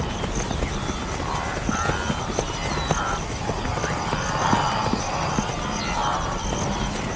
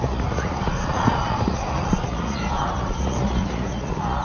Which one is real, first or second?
first